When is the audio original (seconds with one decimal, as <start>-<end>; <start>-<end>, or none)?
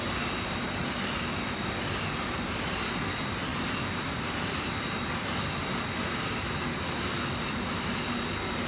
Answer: 0.0-8.7